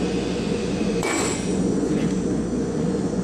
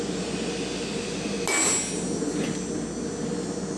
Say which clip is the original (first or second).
second